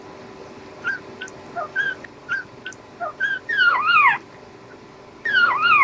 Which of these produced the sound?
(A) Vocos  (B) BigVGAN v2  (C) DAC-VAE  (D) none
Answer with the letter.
D